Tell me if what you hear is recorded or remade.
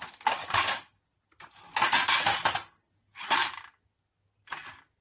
recorded